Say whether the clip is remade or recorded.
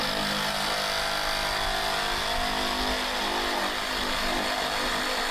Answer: recorded